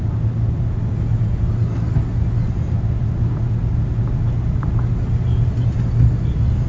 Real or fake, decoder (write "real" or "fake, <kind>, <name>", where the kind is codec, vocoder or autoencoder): real